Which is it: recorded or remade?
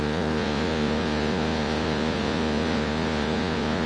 remade